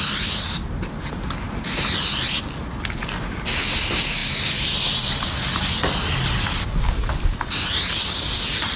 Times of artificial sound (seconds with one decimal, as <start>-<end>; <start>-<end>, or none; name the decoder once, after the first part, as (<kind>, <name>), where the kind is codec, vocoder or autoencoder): none